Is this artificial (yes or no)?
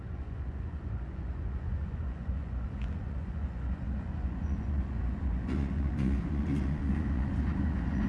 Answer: yes